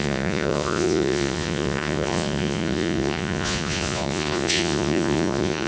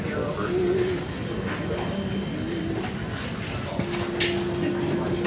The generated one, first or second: first